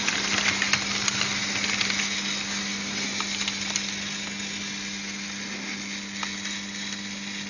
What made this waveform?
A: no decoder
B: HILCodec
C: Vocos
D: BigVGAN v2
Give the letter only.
A